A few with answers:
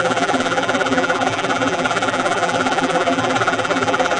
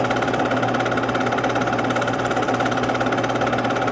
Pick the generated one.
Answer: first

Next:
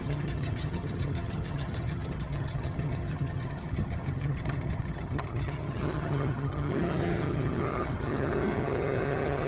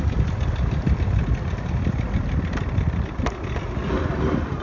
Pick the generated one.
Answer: first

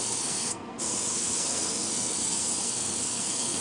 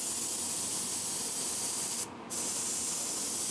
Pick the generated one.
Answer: first